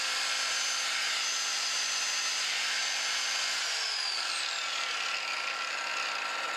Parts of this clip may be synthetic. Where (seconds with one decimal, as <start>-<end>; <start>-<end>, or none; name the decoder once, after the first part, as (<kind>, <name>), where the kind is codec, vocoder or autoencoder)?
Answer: none